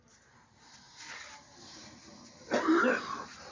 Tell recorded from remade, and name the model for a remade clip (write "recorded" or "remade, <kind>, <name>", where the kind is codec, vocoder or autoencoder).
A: recorded